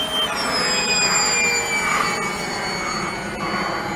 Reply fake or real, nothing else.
real